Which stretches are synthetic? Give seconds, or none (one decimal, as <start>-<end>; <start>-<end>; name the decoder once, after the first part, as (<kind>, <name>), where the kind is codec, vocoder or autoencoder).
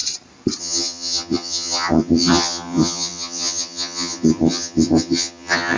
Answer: 0.6-5.8 (vocoder, HiFi-GAN)